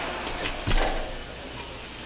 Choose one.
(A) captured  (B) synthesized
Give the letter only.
A